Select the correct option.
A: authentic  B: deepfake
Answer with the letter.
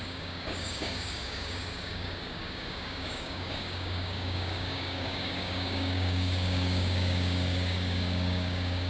B